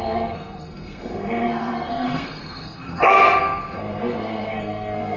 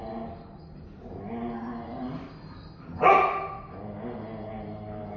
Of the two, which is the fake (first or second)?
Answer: first